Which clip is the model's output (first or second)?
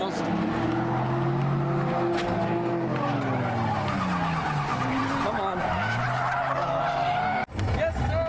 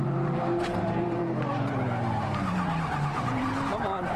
second